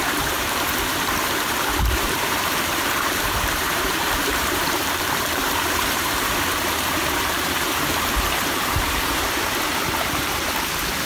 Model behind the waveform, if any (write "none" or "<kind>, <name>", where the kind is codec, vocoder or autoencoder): vocoder, BigVGAN v2